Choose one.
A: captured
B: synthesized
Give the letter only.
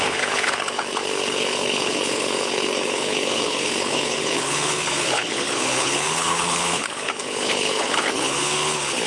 B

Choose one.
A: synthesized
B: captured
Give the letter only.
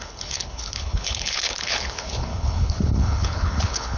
A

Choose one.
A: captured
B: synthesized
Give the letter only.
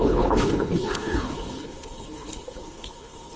B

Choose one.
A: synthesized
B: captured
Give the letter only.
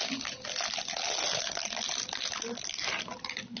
B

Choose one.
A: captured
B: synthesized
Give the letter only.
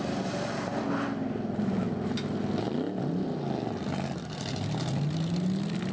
A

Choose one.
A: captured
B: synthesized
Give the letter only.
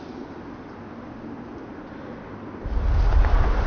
A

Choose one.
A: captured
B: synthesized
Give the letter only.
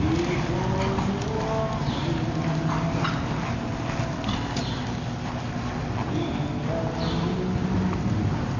A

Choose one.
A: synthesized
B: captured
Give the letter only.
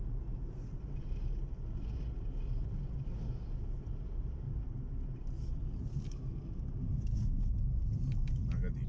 B